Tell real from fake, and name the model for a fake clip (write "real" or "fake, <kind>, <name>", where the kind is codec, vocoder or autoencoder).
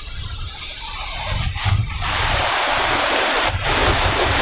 fake, vocoder, BigVGAN v2